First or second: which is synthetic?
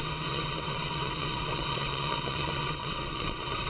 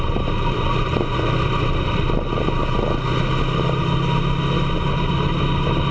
first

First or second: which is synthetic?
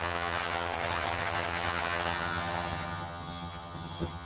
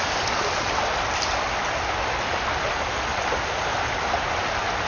first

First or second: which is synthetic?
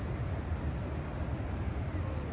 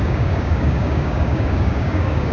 second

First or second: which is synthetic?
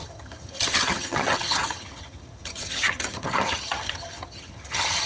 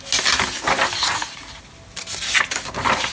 first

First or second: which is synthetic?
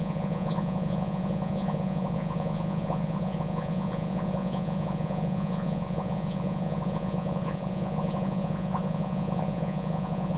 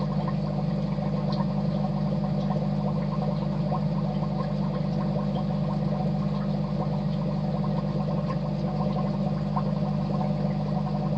first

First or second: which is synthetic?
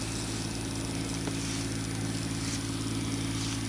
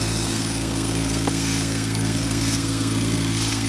second